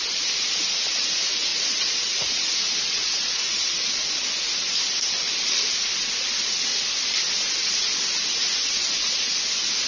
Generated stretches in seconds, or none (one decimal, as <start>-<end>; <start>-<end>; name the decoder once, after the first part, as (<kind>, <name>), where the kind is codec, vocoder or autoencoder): 1.5-4.1 (vocoder, Vocos)